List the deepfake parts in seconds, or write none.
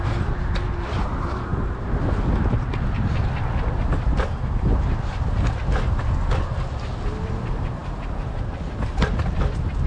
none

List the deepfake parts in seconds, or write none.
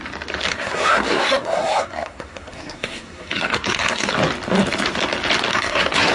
0.5-4.1 (codec, SNAC); 5.5-6.1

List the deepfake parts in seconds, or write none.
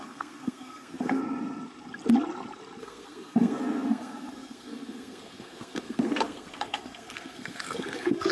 0.0-1.2 (codec, SNAC); 2.8-8.3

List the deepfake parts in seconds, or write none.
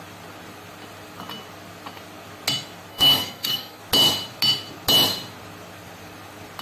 2.9-3.8 (codec, SNAC)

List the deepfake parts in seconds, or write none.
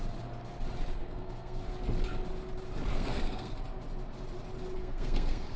1.0-1.7 (codec, SNAC); 2.9-3.5; 4.8-5.6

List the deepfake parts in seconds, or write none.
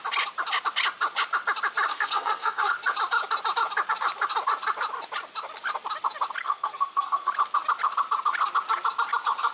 1.9-2.7 (codec, SNAC); 6.4-7.3